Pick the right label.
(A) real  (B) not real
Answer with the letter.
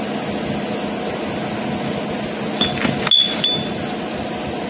A